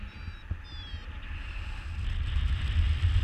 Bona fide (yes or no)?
yes